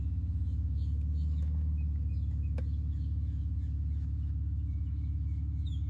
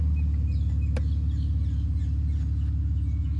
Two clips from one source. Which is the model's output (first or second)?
first